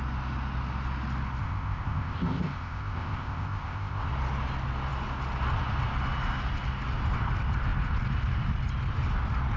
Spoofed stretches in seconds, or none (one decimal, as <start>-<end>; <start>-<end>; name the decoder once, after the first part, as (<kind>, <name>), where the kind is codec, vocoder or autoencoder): 1.4-4.1 (codec, ZipCodec)